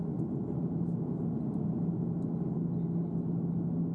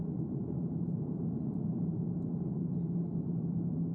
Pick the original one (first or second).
first